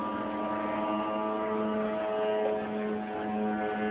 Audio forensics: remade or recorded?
recorded